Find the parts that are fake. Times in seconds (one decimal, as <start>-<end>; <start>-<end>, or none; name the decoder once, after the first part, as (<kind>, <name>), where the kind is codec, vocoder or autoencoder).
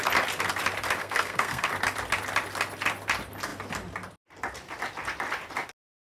1.0-1.7 (codec, SNAC)